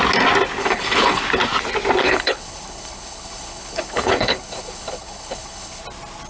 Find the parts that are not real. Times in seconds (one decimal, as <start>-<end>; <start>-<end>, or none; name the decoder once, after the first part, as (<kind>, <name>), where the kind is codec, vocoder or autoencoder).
0.6-1.2 (codec, HILCodec); 2.0-5.8